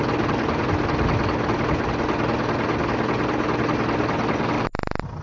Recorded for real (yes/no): yes